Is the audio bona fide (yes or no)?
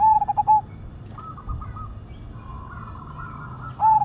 yes